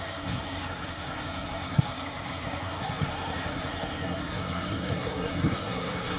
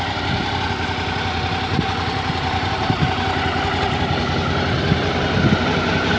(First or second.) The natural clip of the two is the second